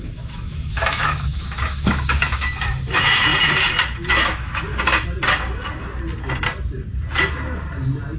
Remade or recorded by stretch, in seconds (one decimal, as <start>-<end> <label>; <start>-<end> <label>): 0.0-3.3 remade; 3.3-4.1 recorded; 4.1-4.7 remade; 4.7-8.2 recorded